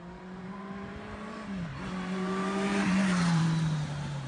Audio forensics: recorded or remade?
remade